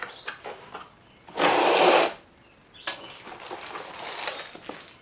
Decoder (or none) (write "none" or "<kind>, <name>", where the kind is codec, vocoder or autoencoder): none